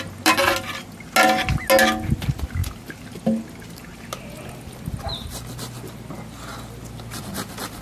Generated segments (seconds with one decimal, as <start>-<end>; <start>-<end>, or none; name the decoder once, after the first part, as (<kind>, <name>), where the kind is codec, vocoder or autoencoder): none